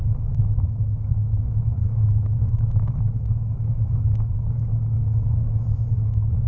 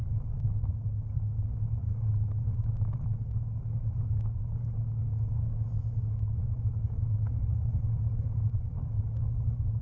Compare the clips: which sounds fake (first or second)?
first